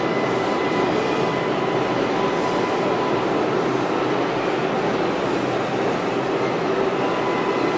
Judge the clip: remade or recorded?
recorded